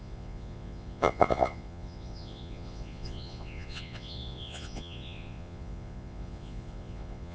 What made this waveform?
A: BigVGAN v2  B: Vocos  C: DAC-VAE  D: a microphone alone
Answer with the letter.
B